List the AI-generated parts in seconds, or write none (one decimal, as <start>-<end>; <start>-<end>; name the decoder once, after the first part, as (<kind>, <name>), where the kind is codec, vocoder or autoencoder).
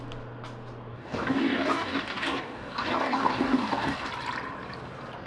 0.9-4.1 (codec, DAC)